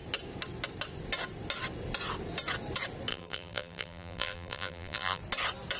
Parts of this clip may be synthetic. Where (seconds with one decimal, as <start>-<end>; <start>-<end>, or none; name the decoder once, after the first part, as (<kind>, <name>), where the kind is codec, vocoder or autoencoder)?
3.1-5.2 (vocoder, BigVGAN v2)